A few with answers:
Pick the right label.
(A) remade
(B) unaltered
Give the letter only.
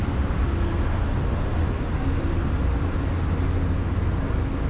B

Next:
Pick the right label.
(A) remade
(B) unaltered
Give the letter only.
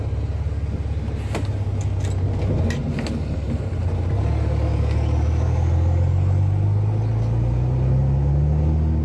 B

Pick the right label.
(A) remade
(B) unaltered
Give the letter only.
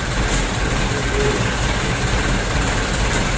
A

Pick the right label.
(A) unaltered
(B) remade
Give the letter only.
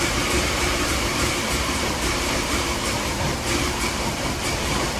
B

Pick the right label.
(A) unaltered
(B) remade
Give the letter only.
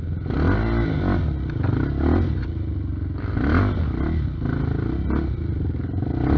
A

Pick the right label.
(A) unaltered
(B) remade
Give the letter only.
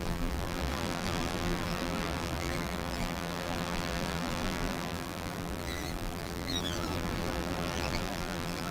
B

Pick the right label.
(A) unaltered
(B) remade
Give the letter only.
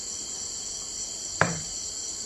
B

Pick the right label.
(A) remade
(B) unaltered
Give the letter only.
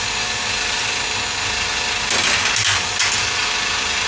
B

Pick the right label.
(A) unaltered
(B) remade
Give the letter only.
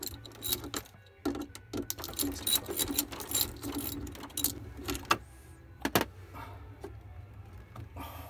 A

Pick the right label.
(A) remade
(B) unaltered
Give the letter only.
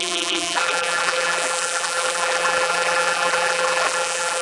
A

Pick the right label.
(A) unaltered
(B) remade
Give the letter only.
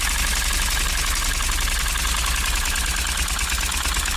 A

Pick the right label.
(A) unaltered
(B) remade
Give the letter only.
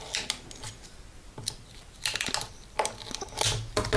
A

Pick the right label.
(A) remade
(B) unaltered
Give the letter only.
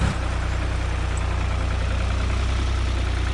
A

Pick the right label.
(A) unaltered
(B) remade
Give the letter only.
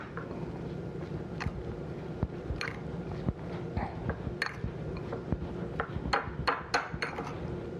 A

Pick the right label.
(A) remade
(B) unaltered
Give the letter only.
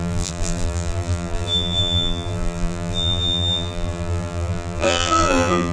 A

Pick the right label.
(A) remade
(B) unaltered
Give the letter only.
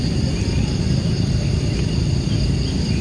B